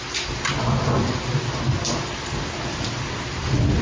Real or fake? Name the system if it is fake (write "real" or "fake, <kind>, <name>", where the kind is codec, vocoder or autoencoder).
real